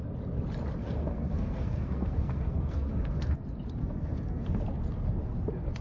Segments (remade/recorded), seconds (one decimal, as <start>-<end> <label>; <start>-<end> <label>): 0.0-0.8 recorded; 0.8-3.4 remade; 3.4-3.8 recorded; 3.8-4.6 remade; 4.6-5.8 recorded